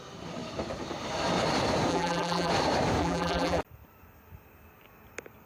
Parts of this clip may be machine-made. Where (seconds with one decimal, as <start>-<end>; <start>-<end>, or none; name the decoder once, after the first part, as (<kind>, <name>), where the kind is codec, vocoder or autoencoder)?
1.9-2.5 (vocoder, BigVGAN v2); 3.0-3.6